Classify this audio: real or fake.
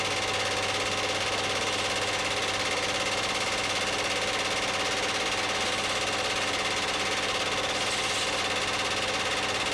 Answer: real